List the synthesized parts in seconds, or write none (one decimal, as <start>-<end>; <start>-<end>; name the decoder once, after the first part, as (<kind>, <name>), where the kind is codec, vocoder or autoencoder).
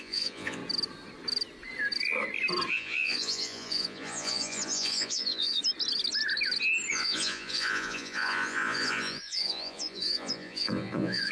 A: 0.0-0.6 (vocoder, Vocos); 2.7-5.6; 6.9-11.3